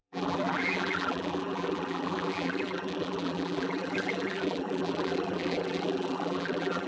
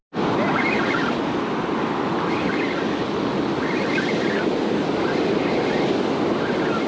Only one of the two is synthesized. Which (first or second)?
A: first